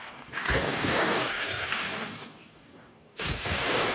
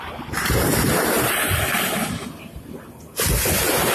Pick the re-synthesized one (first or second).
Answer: first